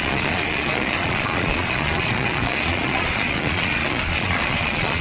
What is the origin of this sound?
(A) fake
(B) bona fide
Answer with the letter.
A